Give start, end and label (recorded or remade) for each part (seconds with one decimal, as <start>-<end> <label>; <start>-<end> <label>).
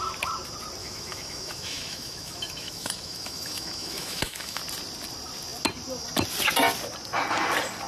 0.0-0.8 recorded; 0.8-4.6 remade; 4.6-7.9 recorded